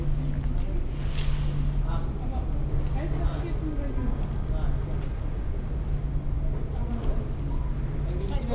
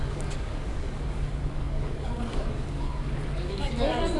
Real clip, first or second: first